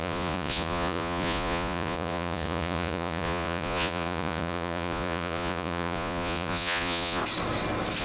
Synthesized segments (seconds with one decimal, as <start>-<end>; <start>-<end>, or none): 0.0-7.2